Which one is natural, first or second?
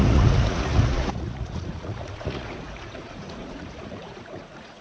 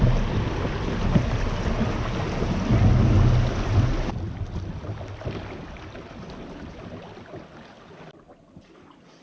second